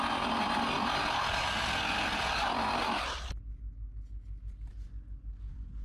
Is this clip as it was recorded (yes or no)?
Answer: yes